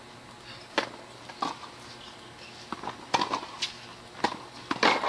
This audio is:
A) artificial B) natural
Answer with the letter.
B